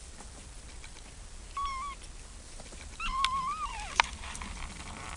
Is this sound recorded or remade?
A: recorded